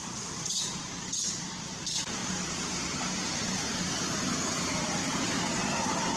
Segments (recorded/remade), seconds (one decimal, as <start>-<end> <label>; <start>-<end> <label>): 0.0-5.0 remade; 5.0-6.2 recorded